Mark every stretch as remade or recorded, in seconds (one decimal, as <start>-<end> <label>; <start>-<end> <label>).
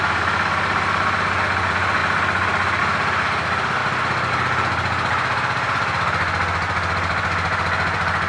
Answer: 0.0-8.3 recorded